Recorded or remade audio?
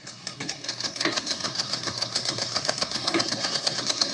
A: remade